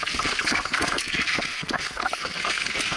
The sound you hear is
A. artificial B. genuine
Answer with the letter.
A